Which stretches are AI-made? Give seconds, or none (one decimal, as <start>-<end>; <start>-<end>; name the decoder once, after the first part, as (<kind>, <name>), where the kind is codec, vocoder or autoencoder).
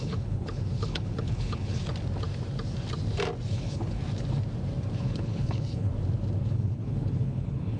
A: 0.0-1.8 (codec, HILCodec); 3.5-4.0; 5.0-5.9; 6.4-7.8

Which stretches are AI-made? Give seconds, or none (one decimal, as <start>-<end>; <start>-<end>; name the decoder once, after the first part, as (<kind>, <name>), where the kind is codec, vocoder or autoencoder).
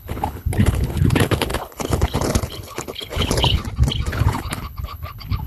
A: 0.0-3.6 (codec, HILCodec); 4.1-5.5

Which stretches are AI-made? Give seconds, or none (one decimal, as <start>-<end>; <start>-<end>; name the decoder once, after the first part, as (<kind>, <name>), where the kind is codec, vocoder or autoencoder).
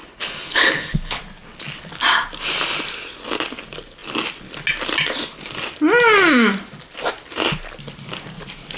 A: 0.0-1.2 (codec, HILCodec)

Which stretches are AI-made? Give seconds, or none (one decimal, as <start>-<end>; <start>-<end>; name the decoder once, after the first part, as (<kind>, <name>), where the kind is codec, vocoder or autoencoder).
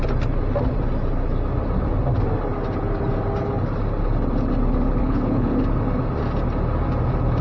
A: 5.0-5.6 (codec, HILCodec)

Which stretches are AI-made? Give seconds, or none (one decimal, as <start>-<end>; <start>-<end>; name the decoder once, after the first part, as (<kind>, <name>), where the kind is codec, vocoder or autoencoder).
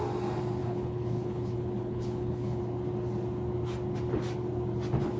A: 0.6-2.6 (codec, HILCodec)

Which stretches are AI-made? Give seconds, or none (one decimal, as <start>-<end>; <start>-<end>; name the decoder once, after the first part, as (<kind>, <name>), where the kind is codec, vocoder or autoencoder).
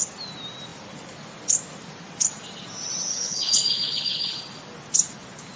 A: 3.1-4.4 (codec, HILCodec)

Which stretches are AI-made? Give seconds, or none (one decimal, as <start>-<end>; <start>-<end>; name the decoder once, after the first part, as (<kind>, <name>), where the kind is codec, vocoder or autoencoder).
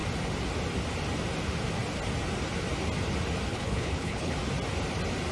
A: 3.5-4.3 (codec, HILCodec)